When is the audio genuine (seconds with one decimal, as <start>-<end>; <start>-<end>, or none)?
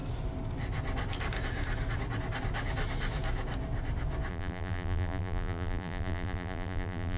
0.0-4.3